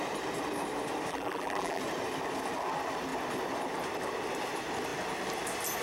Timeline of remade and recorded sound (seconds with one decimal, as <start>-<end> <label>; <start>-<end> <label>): 0.0-1.1 recorded; 1.1-1.8 remade; 1.8-5.8 recorded